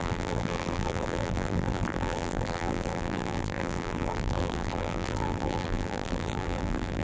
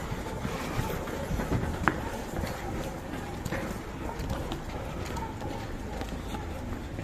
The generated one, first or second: first